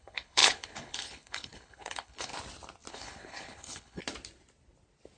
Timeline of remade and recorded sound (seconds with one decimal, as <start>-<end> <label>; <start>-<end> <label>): 0.0-2.3 remade; 2.3-2.9 recorded; 2.9-4.0 remade; 4.0-5.2 recorded